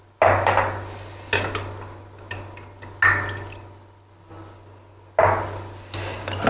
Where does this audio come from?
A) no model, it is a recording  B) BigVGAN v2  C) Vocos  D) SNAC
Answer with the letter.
A